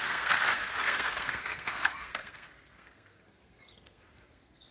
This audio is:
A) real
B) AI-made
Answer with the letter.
B